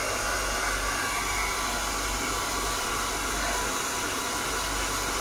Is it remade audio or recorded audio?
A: recorded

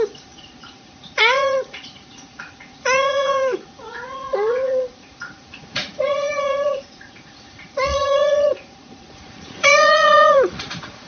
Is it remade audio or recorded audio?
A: remade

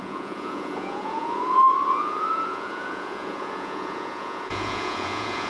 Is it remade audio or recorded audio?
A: remade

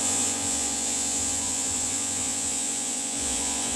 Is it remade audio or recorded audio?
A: remade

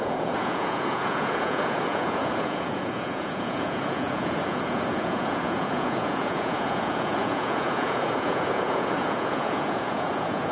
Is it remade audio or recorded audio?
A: remade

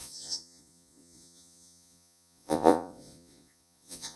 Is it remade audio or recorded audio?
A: remade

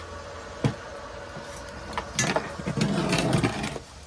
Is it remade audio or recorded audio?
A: recorded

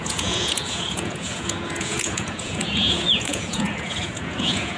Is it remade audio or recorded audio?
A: remade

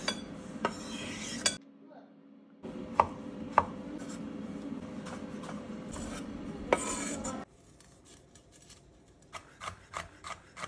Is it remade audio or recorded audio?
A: recorded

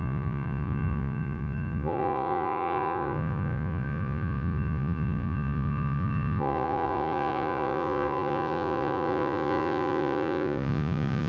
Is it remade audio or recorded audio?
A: remade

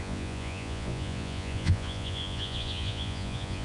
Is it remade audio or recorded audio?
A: remade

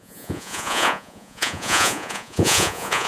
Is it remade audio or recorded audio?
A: remade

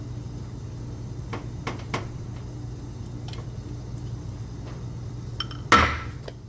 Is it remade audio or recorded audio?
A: recorded